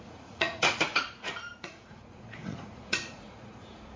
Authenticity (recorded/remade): remade